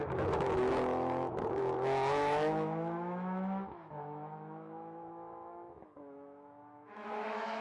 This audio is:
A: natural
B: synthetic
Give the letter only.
B